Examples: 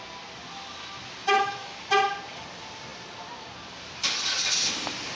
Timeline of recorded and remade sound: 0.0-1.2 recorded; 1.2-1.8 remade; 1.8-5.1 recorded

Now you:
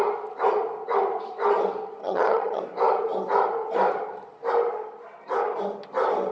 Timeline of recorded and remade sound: 0.0-2.0 recorded; 2.0-2.6 remade; 2.6-6.3 recorded

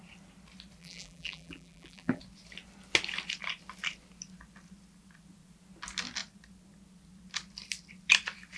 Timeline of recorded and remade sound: 0.0-0.8 recorded; 0.8-2.2 remade; 2.2-8.6 recorded